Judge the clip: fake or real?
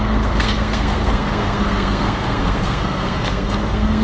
fake